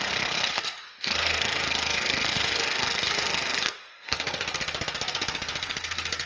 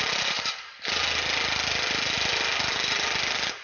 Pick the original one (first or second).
second